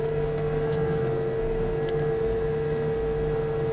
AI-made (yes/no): yes